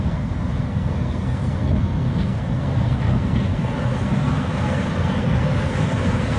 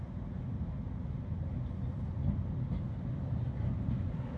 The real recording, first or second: second